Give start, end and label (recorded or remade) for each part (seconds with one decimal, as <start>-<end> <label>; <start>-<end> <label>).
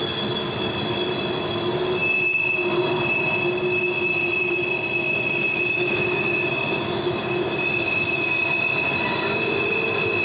0.0-10.2 recorded